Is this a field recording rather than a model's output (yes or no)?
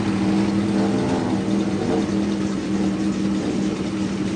yes